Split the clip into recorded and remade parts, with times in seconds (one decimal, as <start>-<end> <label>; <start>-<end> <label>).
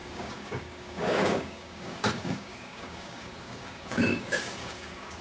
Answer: 0.0-5.2 remade